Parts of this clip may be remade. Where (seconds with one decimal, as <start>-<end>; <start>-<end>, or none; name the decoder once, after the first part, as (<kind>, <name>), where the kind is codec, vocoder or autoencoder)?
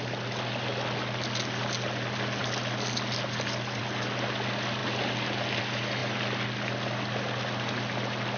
none